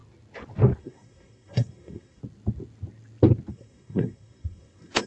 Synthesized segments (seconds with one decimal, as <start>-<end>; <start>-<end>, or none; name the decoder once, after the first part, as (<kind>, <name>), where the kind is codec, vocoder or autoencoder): 0.8-2.2 (codec, SNAC); 3.5-5.1